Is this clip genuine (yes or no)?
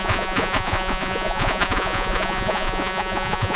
no